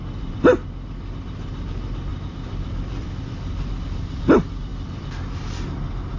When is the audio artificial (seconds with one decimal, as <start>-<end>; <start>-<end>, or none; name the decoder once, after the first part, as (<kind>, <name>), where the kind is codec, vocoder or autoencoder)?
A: 2.1-3.7 (vocoder, BigVGAN v2)